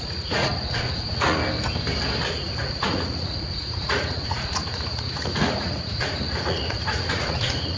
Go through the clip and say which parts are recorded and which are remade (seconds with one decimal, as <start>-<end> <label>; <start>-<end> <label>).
0.0-1.4 remade; 1.4-2.3 recorded; 2.3-7.8 remade